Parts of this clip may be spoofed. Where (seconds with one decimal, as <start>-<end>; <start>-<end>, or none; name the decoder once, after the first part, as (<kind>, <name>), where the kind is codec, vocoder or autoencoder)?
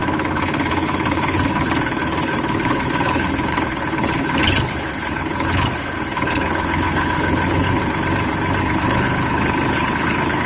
0.0-7.8 (codec, HILCodec); 8.6-10.5